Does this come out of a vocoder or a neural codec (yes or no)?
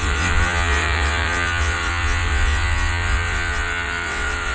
yes